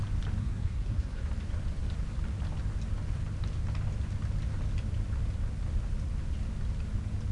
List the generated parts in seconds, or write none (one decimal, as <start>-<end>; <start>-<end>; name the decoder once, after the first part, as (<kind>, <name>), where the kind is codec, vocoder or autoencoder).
0.4-1.3 (codec, SNAC)